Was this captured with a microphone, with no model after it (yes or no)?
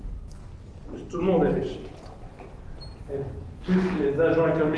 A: yes